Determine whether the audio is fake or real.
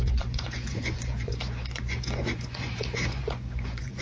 fake